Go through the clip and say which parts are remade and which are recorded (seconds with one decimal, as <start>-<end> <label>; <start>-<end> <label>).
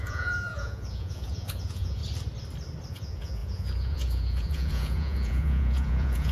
0.0-2.0 remade; 2.0-2.9 recorded; 2.9-6.3 remade